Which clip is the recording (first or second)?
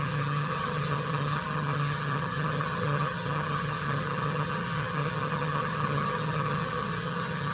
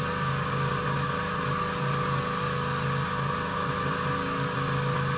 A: second